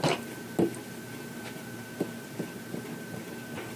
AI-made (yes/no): no